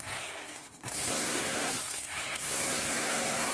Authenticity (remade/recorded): remade